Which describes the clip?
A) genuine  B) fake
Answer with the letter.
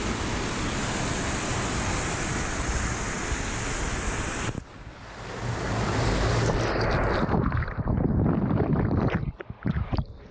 A